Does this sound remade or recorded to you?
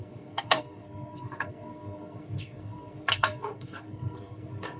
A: remade